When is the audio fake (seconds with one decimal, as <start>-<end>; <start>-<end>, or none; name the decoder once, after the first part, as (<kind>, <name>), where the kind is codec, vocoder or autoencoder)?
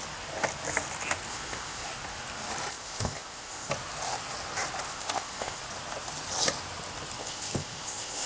1.3-1.9 (codec, ZipCodec); 2.7-3.7; 4.9-5.6; 7.2-8.3